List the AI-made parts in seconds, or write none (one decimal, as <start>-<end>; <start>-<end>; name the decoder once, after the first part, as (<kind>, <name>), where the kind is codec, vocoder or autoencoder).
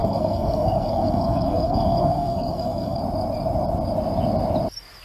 0.0-3.0 (codec, SNAC)